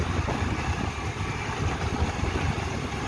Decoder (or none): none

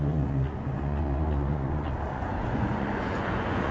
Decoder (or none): vocoder, Vocos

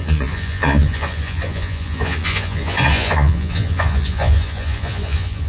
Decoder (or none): vocoder, Vocos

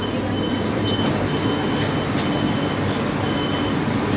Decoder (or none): none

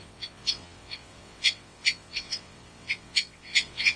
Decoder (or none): vocoder, WaveNeXt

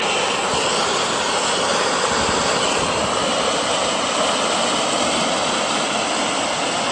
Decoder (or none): none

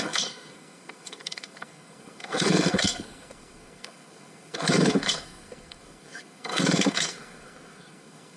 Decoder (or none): codec, SNAC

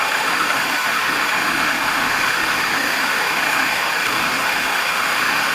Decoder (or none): autoencoder, DAC-VAE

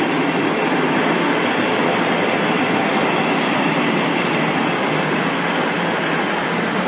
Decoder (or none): none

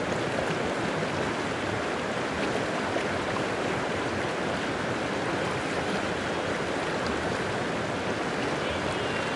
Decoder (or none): none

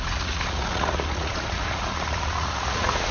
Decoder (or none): vocoder, Vocos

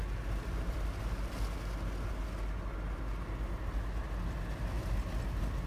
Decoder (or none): none